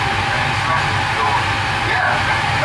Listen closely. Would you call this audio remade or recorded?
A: recorded